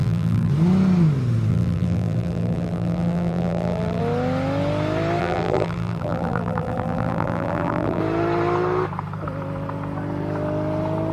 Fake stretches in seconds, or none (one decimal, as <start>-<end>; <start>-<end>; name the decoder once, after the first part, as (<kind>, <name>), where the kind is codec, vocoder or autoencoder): 0.0-0.5 (vocoder, BigVGAN v2); 1.5-4.0; 5.2-8.0

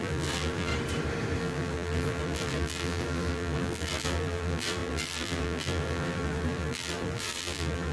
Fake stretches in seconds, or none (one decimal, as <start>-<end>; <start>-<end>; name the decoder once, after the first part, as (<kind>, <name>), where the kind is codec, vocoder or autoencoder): 0.0-0.7 (vocoder, BigVGAN v2); 1.4-7.9

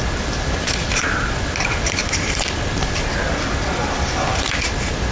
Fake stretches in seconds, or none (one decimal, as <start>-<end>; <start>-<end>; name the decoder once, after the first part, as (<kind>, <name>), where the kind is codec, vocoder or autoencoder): none

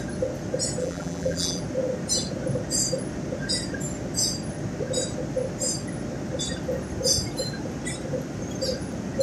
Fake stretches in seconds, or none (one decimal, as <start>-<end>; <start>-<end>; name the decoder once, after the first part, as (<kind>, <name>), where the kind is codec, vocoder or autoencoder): 0.8-1.6 (vocoder, BigVGAN v2)

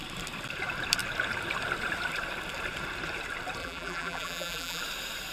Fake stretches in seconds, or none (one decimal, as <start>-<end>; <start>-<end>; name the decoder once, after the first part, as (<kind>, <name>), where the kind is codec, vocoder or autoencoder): 3.6-4.8 (vocoder, BigVGAN v2)

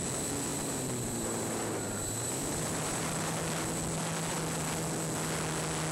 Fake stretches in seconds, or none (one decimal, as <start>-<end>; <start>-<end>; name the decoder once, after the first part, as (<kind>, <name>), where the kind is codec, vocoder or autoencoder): 0.5-3.4 (vocoder, BigVGAN v2)

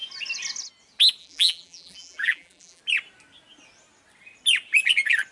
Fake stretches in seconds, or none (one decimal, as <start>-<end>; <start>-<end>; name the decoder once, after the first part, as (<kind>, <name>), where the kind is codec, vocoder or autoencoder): 1.2-2.8 (vocoder, BigVGAN v2)

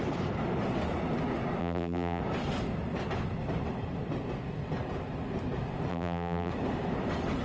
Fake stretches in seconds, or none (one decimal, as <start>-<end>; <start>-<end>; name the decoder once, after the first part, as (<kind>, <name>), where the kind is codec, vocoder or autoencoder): 1.6-2.2 (vocoder, BigVGAN v2); 5.9-6.5